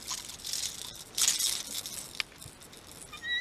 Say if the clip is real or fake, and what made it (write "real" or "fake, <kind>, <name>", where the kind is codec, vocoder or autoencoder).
real